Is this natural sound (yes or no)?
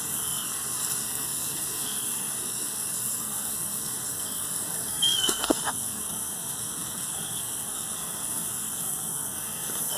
no